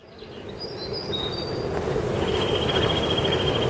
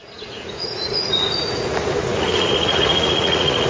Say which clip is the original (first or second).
first